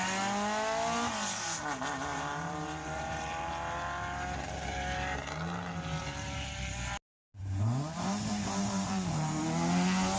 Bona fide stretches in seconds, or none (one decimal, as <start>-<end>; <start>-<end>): 0.0-2.1; 3.5-6.0; 6.5-7.4; 9.4-10.2